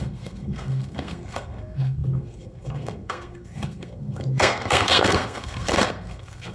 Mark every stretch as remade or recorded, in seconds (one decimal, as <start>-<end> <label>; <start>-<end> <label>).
0.0-6.5 remade